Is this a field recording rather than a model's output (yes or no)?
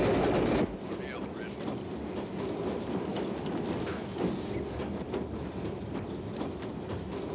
yes